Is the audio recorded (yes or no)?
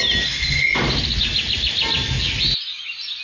yes